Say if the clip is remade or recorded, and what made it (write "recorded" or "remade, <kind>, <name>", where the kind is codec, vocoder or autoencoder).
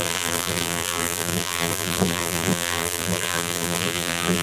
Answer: remade, vocoder, BigVGAN v2